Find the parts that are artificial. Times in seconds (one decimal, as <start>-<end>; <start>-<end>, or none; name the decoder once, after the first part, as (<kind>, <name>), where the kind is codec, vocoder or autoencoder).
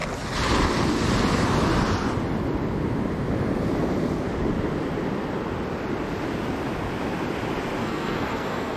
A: 7.8-8.8 (codec, SNAC)